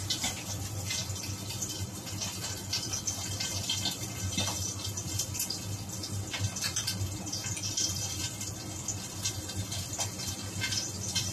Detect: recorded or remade recorded